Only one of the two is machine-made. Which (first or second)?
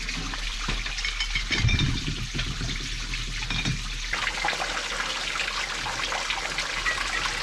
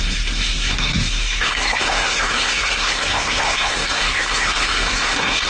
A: second